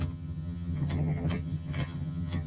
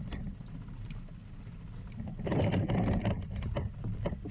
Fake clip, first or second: first